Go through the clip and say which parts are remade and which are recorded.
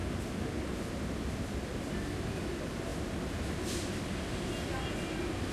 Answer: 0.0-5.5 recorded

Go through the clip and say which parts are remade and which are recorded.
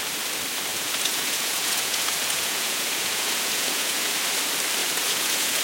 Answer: 0.0-0.7 recorded; 0.7-4.1 remade; 4.1-4.8 recorded; 4.8-5.6 remade